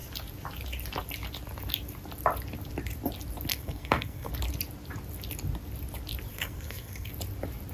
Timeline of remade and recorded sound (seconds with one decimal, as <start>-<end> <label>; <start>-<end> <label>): 0.0-3.5 recorded; 3.5-4.3 remade; 4.3-6.3 recorded; 6.3-7.1 remade; 7.1-7.7 recorded